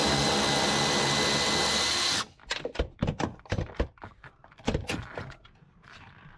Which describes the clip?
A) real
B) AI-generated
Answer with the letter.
A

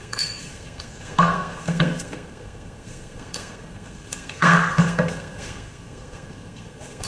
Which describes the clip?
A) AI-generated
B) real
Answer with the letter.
A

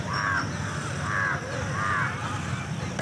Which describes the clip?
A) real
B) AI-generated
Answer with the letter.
A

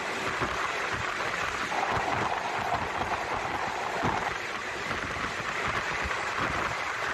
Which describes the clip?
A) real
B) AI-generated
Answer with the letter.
A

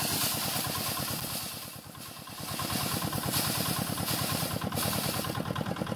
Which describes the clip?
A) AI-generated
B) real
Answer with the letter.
B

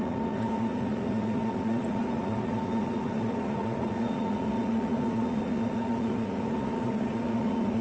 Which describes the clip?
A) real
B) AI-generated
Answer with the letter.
B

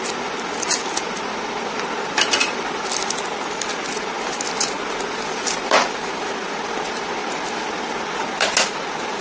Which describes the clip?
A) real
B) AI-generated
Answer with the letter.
A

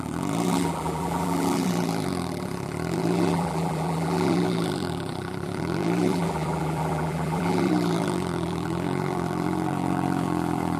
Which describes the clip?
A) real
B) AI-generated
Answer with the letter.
B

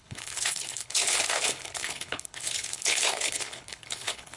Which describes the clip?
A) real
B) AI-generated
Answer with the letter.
B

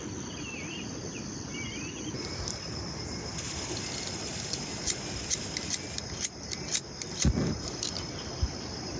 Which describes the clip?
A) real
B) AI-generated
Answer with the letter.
A